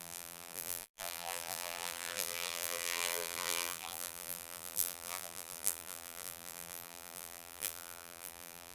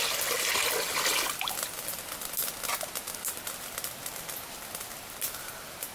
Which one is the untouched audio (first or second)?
second